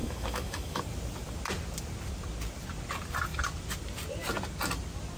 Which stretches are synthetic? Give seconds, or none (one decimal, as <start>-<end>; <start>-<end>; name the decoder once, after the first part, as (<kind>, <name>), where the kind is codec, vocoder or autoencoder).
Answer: 0.0-0.8 (autoencoder, DAC-VAE)